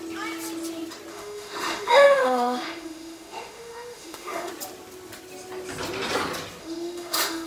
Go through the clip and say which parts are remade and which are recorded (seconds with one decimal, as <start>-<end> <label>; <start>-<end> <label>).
0.0-1.1 recorded; 1.1-4.5 remade; 4.5-6.6 recorded; 6.6-7.5 remade